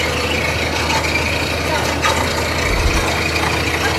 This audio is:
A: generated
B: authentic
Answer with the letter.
B